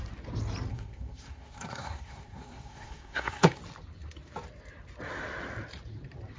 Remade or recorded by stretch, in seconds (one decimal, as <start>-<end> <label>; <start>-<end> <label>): 0.0-0.7 recorded; 0.7-3.6 remade; 3.6-6.4 recorded